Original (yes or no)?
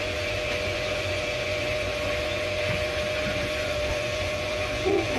no